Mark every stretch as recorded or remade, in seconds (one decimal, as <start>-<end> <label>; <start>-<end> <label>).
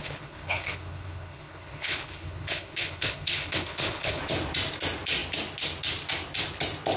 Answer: 0.0-4.2 remade; 4.2-7.0 recorded